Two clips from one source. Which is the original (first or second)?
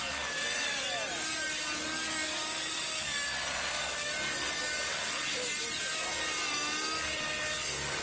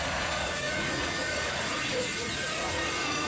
first